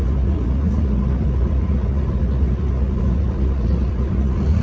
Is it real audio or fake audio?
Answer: fake